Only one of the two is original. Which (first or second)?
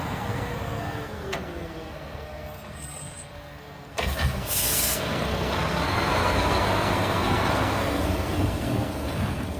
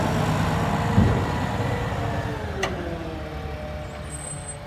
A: second